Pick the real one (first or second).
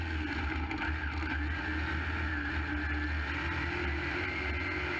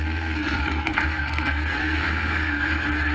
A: first